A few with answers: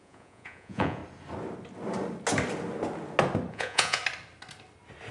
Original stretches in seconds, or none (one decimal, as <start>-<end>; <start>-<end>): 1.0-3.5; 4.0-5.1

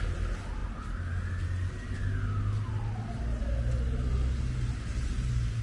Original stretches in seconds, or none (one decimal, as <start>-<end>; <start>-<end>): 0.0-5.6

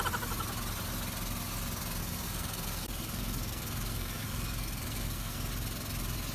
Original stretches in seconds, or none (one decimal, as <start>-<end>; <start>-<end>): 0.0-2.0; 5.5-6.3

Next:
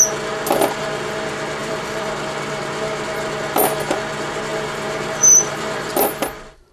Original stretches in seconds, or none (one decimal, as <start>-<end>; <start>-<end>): 0.0-1.6; 2.1-4.5; 5.9-6.7

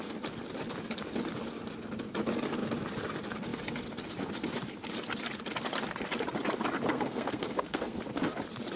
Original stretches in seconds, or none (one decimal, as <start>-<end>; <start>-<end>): 0.0-6.9; 8.0-8.8